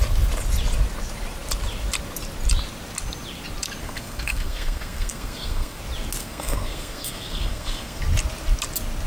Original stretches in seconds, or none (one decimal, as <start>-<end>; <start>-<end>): 0.0-3.8; 5.8-6.2; 8.0-9.1